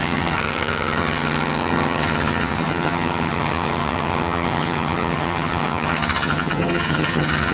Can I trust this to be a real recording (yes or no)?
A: no